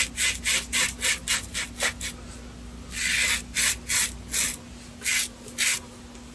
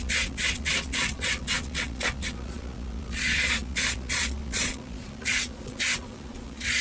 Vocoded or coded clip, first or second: second